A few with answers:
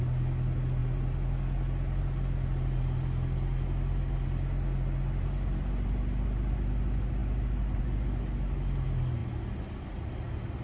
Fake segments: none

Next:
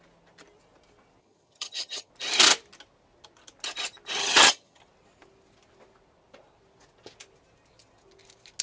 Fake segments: 1.2-2.1 (vocoder, HiFi-GAN); 4.2-4.8